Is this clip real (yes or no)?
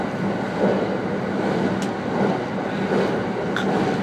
yes